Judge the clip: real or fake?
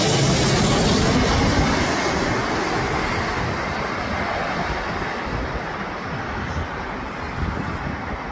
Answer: real